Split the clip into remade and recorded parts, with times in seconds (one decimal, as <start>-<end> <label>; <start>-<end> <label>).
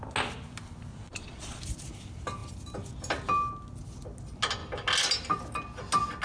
0.0-0.9 recorded; 0.9-1.6 remade; 1.6-6.2 recorded